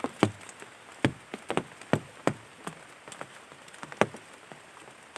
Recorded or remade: recorded